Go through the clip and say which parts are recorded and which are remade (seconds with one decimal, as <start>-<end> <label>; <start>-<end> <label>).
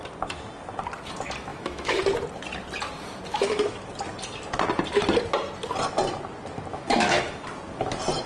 0.0-1.5 recorded; 1.5-2.0 remade; 2.0-3.3 recorded; 3.3-3.9 remade; 3.9-6.7 recorded; 6.7-7.2 remade; 7.2-8.3 recorded